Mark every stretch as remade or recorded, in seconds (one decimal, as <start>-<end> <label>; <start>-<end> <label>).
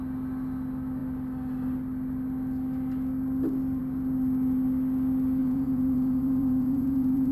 0.0-5.4 recorded; 5.4-7.3 remade